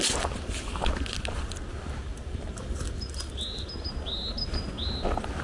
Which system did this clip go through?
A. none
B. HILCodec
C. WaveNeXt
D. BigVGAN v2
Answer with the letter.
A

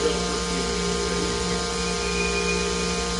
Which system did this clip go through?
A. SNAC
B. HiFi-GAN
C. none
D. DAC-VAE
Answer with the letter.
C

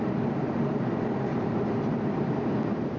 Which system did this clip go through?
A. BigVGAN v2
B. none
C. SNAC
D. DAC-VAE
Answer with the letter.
A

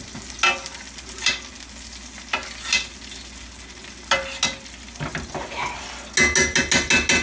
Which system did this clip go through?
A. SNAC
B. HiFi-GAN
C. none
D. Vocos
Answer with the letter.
C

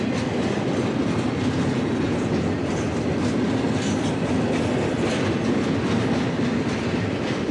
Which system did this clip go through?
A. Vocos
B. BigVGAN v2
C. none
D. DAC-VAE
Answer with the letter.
C